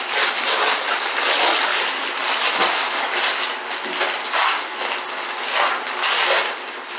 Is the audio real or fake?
real